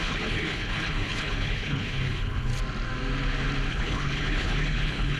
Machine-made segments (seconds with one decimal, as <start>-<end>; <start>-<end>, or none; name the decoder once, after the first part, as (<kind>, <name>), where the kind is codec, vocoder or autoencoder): 0.0-2.5 (codec, HILCodec); 3.7-5.2